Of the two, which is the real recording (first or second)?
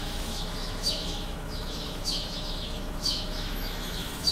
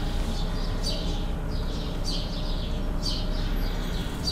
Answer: second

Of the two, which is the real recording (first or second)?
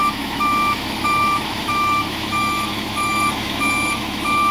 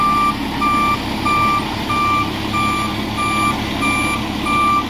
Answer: second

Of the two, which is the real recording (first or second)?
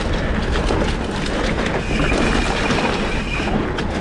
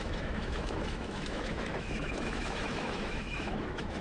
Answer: first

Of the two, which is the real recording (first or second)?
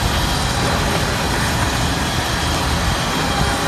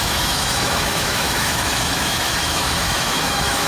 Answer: first